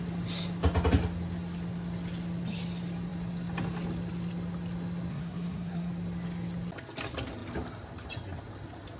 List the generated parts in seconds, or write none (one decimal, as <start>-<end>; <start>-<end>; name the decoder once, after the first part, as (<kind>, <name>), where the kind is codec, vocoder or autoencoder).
5.1-5.9 (codec, SNAC)